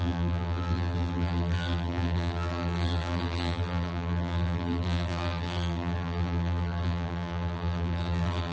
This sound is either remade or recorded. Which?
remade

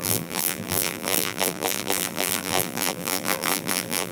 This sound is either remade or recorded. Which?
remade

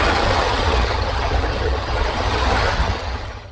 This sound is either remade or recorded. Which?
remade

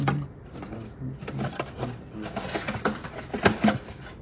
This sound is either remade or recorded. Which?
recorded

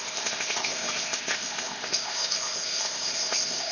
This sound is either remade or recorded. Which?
remade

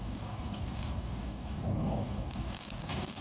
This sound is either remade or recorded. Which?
remade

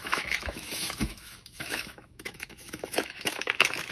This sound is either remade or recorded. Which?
remade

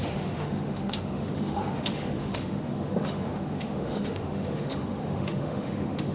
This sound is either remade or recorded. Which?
remade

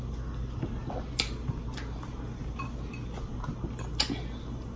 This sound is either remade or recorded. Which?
recorded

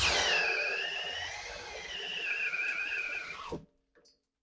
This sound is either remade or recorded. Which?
recorded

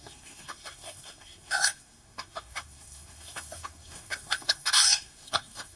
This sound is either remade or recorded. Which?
remade